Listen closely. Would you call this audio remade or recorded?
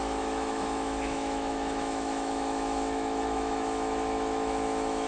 remade